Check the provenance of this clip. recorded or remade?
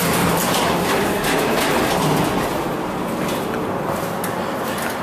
recorded